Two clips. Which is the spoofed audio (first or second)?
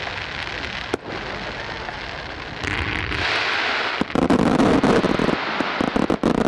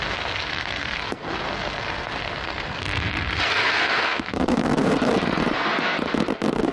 second